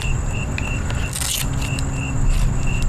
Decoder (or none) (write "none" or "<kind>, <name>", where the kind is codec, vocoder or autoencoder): none